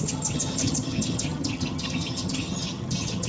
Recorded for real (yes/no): no